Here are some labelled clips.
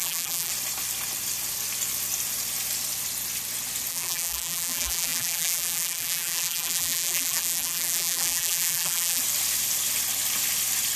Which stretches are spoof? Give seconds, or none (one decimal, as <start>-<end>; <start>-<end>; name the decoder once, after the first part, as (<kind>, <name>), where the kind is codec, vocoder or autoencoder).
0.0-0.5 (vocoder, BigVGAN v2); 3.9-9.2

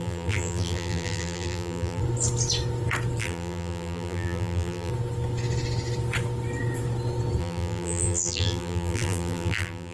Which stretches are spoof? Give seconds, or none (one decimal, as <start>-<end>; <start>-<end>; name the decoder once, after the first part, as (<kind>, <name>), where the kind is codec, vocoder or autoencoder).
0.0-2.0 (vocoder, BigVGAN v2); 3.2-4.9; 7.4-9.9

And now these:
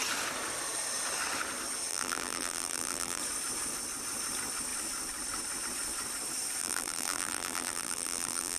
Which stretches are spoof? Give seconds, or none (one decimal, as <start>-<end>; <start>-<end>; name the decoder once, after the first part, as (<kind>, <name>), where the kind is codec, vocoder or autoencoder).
1.9-3.2 (vocoder, BigVGAN v2); 6.6-8.6

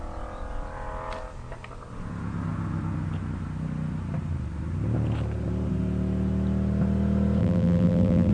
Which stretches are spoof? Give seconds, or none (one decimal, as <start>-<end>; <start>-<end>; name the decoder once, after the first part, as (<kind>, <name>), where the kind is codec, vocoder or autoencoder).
7.4-8.3 (vocoder, BigVGAN v2)